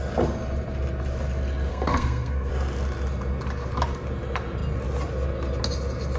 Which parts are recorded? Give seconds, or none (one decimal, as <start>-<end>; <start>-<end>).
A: 0.0-1.7; 2.5-6.2